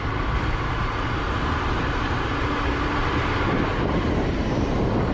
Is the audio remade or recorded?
remade